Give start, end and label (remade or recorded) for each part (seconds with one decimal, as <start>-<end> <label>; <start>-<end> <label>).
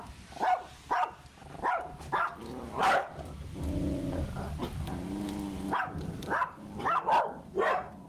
0.0-8.1 recorded